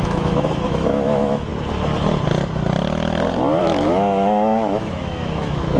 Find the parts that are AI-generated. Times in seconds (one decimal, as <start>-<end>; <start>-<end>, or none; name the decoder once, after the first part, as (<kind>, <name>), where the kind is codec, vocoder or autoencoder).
0.0-1.5 (autoencoder, DAC-VAE); 3.6-5.8